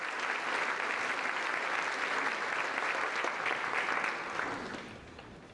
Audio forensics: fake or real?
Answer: real